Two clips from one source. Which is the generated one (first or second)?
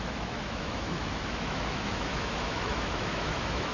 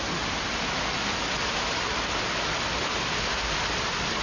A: first